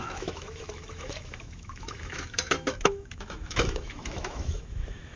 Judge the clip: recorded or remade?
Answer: remade